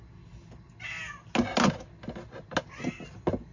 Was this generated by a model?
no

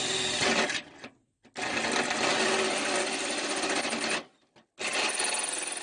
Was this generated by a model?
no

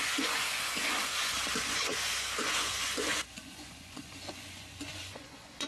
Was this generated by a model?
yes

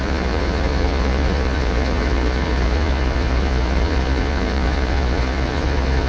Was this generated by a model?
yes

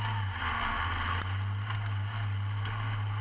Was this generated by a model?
no